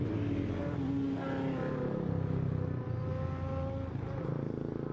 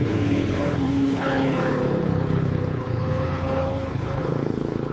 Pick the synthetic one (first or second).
second